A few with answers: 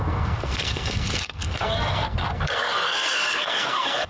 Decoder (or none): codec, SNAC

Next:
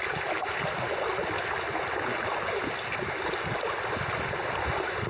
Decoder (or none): none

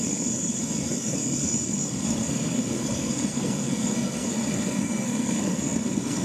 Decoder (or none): codec, SNAC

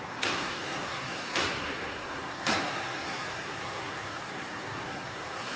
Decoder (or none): codec, SNAC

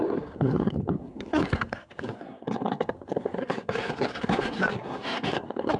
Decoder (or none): codec, SNAC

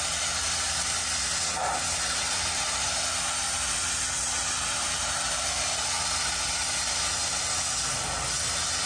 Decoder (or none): none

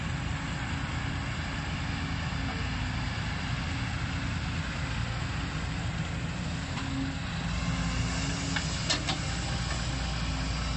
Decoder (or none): none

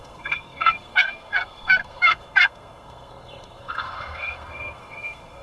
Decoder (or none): codec, SNAC